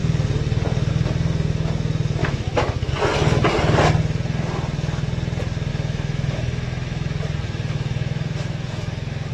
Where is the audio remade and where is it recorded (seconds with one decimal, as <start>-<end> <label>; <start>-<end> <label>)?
0.0-2.2 recorded; 2.2-2.9 remade; 2.9-5.7 recorded; 5.7-9.3 remade